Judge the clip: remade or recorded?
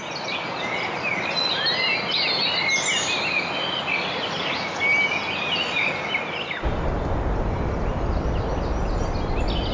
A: recorded